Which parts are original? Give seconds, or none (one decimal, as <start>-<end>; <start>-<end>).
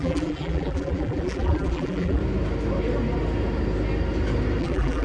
2.2-4.6